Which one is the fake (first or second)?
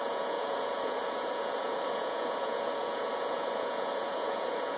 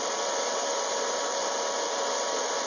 first